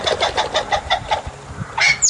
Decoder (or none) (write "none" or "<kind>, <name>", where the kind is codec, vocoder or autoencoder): none